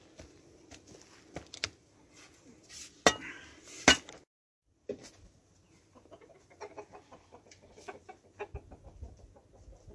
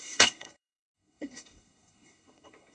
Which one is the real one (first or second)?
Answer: first